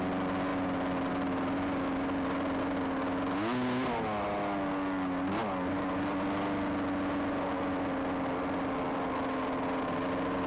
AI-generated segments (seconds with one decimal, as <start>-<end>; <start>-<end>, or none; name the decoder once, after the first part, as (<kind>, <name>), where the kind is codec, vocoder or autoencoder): none